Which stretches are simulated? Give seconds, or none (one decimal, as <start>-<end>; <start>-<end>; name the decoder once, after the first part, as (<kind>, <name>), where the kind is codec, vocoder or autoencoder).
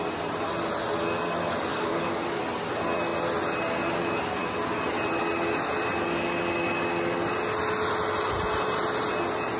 1.7-2.4 (codec, DAC)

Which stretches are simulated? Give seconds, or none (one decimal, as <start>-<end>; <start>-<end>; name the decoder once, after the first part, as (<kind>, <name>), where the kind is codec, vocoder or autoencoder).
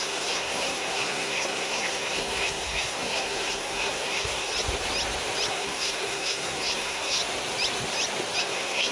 0.0-4.5 (codec, SNAC); 5.5-7.2; 8.4-8.9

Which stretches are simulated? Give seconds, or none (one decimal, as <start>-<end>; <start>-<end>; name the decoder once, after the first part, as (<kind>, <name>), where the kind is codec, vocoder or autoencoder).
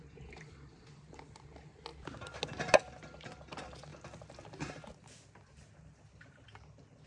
none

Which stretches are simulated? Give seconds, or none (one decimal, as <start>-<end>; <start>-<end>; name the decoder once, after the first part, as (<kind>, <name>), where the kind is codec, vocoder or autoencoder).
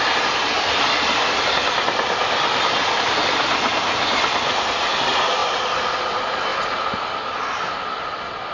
none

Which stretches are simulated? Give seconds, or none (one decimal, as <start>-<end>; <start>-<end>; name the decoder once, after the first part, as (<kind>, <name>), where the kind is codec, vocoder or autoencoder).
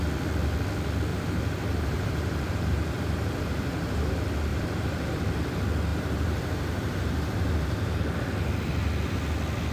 1.1-4.1 (vocoder, BigVGAN v2); 4.5-5.2; 5.9-8.0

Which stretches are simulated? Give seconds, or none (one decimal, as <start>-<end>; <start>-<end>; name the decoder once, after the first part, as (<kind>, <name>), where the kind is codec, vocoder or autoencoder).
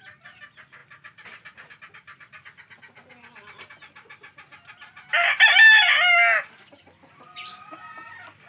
none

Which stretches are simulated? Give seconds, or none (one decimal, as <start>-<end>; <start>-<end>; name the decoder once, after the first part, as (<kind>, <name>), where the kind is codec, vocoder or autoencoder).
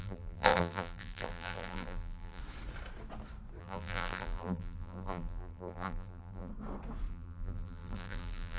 0.0-2.4 (vocoder, BigVGAN v2); 3.6-6.5; 7.1-8.6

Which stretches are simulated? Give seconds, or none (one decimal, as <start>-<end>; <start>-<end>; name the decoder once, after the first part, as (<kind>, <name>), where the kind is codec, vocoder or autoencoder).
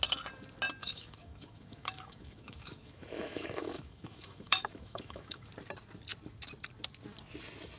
0.8-5.5 (autoencoder, DAC-VAE)